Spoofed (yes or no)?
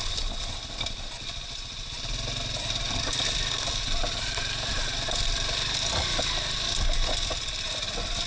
no